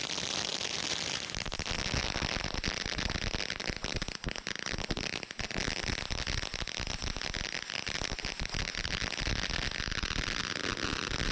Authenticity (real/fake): real